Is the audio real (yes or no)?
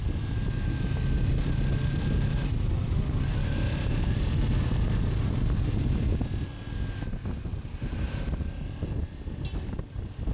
yes